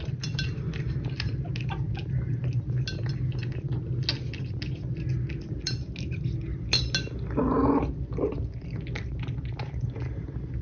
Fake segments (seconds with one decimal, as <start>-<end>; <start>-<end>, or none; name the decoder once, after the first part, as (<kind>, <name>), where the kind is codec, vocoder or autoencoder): none